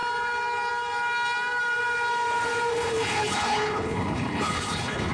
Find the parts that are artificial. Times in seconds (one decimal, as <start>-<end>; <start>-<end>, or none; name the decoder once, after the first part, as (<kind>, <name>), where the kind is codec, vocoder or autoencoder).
2.7-5.1 (codec, HILCodec)